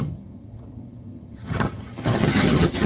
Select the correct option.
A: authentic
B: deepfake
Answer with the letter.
B